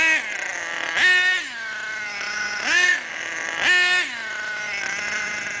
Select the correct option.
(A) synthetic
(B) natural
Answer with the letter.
B